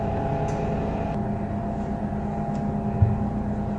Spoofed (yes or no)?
no